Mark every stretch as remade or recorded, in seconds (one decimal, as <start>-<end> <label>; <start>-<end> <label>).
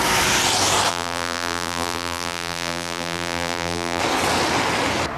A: 0.0-0.9 recorded; 0.9-4.0 remade; 4.0-5.2 recorded